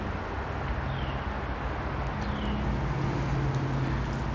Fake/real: real